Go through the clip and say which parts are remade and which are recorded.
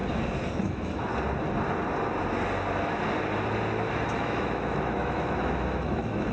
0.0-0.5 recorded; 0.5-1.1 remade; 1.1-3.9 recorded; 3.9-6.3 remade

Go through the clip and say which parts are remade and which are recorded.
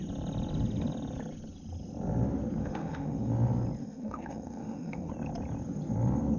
0.0-2.6 recorded; 2.6-3.3 remade; 3.3-3.8 recorded; 3.8-5.1 remade; 5.1-6.4 recorded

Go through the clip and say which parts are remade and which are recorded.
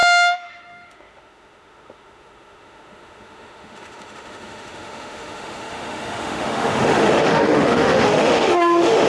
0.0-9.1 remade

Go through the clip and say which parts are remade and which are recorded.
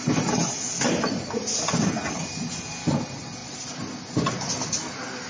0.0-5.3 recorded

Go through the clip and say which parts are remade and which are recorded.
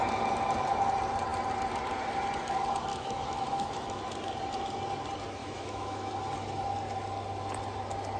0.0-2.9 recorded; 2.9-4.0 remade; 4.0-5.4 recorded; 5.4-6.1 remade; 6.1-8.2 recorded